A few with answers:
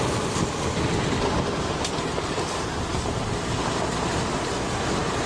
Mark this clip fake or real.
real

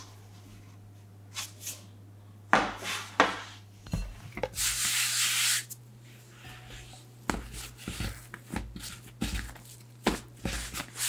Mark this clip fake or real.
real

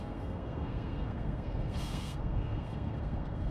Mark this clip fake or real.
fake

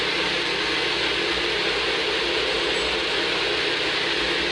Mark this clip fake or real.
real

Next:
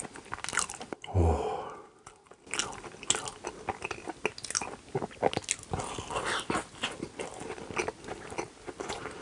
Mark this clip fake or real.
real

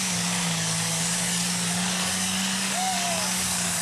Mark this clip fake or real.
fake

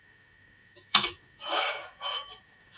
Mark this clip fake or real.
fake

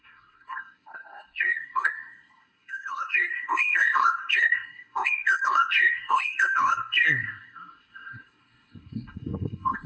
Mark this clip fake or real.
fake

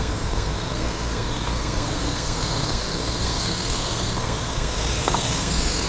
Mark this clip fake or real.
fake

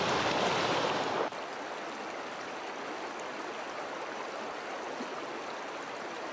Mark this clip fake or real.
real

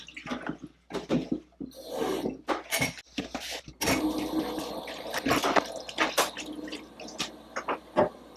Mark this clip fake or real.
real